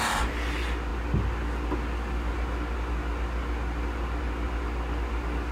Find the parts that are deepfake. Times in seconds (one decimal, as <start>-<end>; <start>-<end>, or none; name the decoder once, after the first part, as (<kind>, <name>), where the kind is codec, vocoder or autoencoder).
none

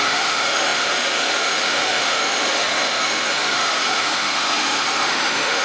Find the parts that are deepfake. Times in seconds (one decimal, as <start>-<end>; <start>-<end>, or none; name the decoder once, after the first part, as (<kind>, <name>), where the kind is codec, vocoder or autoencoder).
0.0-5.6 (autoencoder, DAC-VAE)

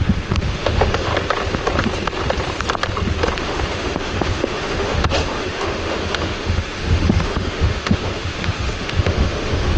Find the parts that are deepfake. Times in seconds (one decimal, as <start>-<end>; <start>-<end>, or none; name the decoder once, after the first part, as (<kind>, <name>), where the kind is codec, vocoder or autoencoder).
0.0-1.1 (autoencoder, DAC-VAE); 3.4-9.8

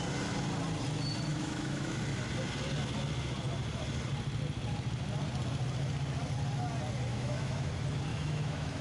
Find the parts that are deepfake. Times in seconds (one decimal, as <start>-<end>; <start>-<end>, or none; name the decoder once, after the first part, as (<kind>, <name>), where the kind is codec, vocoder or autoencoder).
1.3-2.0 (autoencoder, DAC-VAE); 7.1-7.7; 8.1-8.8

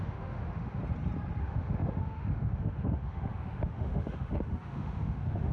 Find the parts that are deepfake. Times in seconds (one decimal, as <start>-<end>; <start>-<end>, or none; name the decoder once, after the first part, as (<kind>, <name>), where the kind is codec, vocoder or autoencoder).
0.0-0.8 (autoencoder, DAC-VAE); 1.4-5.5

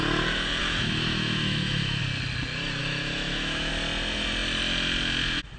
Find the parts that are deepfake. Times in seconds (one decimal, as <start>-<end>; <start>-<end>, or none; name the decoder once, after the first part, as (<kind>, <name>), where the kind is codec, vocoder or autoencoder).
0.6-2.0 (autoencoder, DAC-VAE); 2.8-3.7

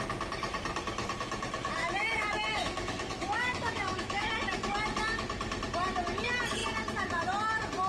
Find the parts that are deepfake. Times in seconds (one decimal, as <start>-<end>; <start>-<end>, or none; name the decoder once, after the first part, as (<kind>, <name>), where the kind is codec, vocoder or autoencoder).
1.8-4.3 (autoencoder, DAC-VAE)

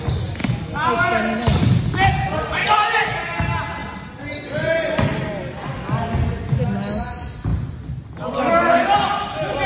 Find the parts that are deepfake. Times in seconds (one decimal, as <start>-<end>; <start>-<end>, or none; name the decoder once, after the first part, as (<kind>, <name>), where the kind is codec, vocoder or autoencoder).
none